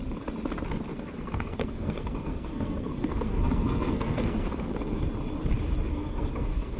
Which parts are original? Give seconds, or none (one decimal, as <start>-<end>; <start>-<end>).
0.0-0.9; 5.0-5.9